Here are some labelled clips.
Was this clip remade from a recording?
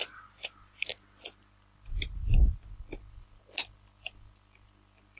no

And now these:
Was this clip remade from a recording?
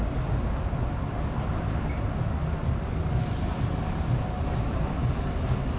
no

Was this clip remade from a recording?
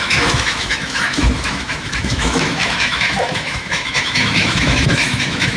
yes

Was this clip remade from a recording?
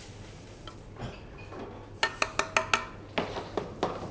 no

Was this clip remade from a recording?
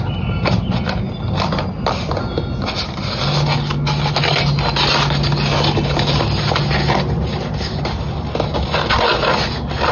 no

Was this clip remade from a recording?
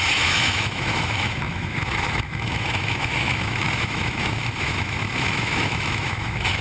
yes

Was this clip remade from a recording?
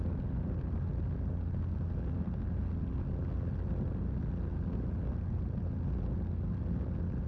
no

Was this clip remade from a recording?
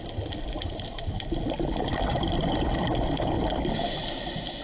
no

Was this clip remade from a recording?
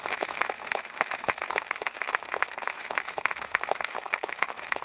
yes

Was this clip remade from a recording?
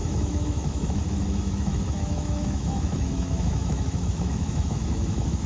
yes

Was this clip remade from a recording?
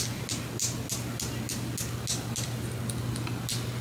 no